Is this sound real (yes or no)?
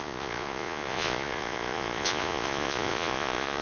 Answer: no